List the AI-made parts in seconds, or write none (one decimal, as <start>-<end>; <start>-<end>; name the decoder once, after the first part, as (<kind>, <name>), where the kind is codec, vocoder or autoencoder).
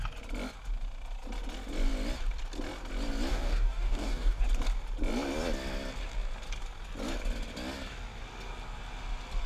3.3-4.4 (codec, DAC)